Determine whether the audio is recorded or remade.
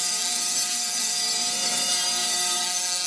remade